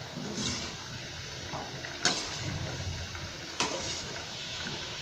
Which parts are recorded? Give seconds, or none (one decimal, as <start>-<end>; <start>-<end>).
0.4-3.4